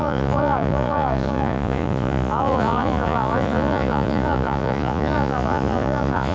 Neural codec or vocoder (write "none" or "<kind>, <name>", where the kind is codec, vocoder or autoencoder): vocoder, Vocos